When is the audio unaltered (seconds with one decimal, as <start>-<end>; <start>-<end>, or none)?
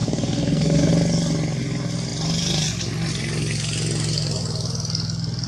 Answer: 0.9-5.5